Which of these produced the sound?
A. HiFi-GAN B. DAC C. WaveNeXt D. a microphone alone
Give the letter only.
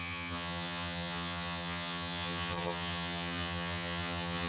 A